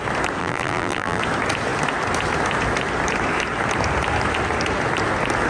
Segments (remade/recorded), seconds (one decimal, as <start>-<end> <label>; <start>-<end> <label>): 0.0-0.4 recorded; 0.4-1.2 remade; 1.2-5.5 recorded